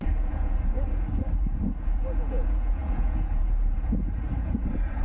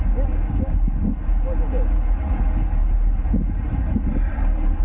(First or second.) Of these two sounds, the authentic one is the second